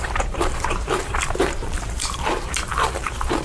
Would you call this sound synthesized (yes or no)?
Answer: yes